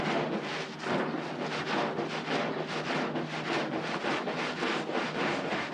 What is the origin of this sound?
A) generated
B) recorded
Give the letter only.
B